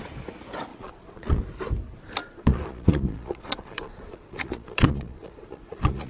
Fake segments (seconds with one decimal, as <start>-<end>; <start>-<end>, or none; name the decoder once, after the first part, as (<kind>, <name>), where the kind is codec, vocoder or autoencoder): 0.7-1.4 (vocoder, Vocos); 2.2-6.1